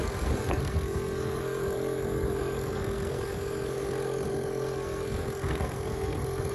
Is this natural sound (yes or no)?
no